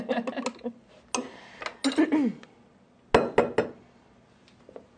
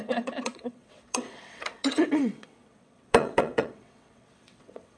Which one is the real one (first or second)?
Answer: first